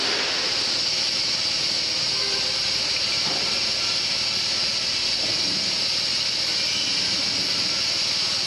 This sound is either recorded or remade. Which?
recorded